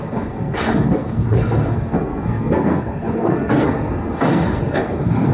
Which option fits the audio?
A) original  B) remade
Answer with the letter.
B